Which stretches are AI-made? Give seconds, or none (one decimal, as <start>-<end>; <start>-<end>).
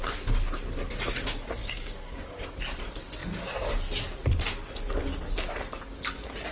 1.6-2.5